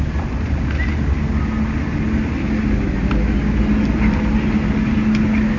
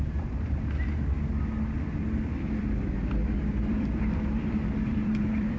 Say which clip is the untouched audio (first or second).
first